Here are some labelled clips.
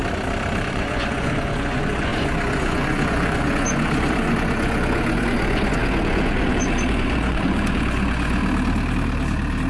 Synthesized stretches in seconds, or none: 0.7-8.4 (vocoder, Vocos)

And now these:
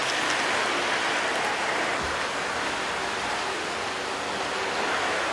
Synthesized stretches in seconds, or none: none

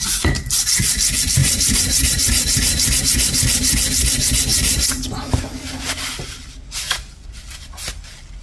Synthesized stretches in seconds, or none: 1.4-3.0 (vocoder, BigVGAN v2); 4.5-5.4